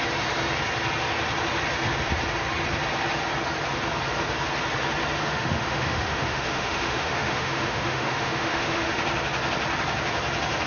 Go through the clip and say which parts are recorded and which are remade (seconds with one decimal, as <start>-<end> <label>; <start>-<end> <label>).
0.0-5.2 recorded; 5.2-9.0 remade; 9.0-10.7 recorded